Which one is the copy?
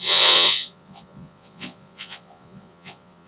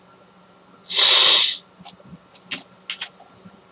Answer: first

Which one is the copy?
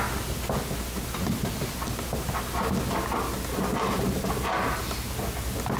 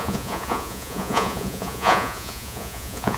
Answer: second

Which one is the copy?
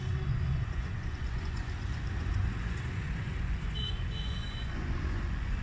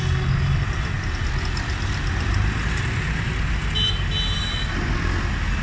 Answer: first